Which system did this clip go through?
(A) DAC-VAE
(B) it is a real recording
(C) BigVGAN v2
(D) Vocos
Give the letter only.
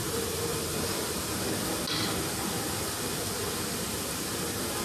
B